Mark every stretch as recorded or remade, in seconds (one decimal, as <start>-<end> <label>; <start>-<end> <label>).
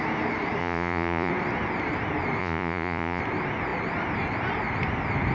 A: 0.0-0.6 recorded; 0.6-1.3 remade; 1.3-2.4 recorded; 2.4-3.2 remade; 3.2-5.3 recorded